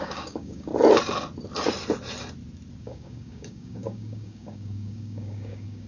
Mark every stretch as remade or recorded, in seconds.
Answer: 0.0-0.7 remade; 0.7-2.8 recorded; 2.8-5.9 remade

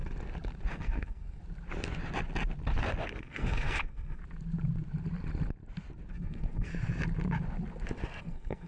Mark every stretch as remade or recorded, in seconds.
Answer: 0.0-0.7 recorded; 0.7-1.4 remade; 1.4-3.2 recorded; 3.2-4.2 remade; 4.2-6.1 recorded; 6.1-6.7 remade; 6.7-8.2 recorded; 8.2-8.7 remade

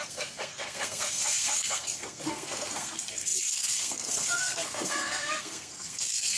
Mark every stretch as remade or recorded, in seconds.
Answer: 0.0-6.4 remade